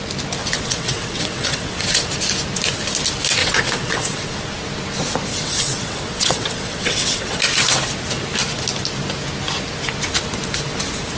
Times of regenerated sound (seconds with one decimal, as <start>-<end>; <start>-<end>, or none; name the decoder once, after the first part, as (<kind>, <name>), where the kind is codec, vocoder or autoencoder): 0.4-2.1 (vocoder, WaveNeXt); 3.4-4.4; 5.3-7.4